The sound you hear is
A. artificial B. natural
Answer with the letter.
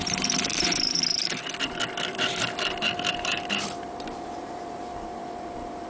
A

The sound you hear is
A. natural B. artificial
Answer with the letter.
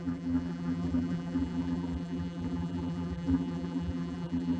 B